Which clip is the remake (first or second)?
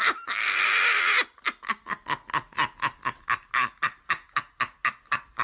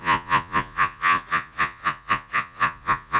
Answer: second